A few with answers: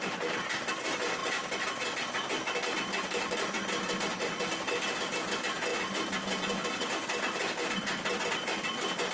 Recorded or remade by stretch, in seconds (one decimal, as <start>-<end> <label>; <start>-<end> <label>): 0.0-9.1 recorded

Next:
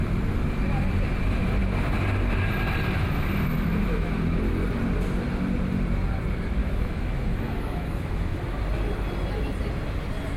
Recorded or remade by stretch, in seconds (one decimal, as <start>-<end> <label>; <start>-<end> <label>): 0.0-3.7 recorded; 3.7-4.4 remade; 4.4-6.6 recorded; 6.6-8.4 remade; 8.4-10.4 recorded

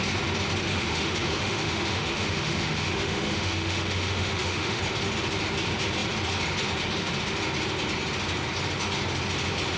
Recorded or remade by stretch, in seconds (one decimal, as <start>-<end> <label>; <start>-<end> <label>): 0.0-0.7 recorded; 0.7-4.8 remade; 4.8-9.8 recorded

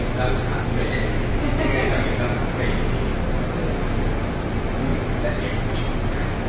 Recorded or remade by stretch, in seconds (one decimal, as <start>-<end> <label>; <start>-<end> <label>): 0.0-0.7 recorded; 0.7-1.9 remade; 1.9-6.5 recorded